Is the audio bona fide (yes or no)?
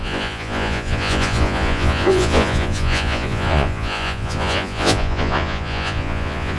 no